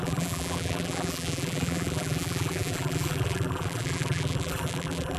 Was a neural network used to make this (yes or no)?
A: yes